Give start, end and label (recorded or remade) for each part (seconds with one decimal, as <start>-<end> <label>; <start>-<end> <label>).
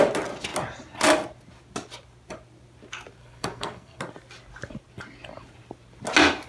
0.0-3.2 recorded; 3.2-4.0 remade; 4.0-6.5 recorded